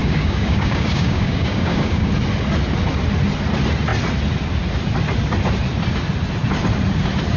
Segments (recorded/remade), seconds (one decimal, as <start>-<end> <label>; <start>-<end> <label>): 0.0-2.1 remade; 2.1-7.4 recorded